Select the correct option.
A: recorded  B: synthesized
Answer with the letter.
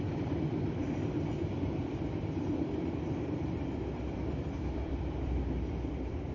B